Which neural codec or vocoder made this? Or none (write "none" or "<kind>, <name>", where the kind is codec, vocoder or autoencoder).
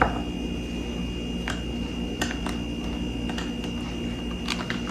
none